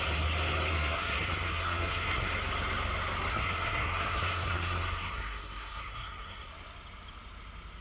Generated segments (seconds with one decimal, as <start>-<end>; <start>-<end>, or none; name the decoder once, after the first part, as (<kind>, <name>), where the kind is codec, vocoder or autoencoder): 0.7-2.3 (codec, SNAC); 3.3-6.5